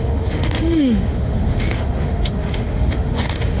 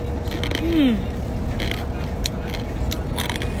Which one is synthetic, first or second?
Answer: first